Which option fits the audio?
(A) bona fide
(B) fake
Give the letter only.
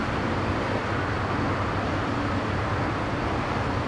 A